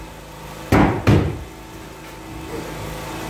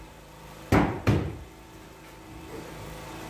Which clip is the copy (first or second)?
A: second